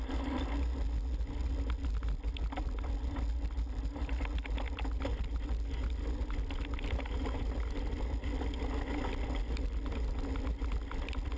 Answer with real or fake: real